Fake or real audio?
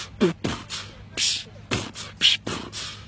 real